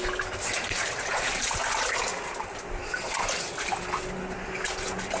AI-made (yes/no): no